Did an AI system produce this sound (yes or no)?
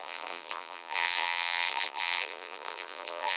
yes